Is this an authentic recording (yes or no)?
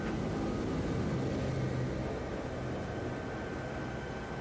yes